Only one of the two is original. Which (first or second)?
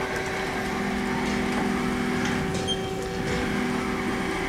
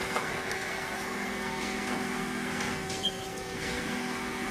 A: first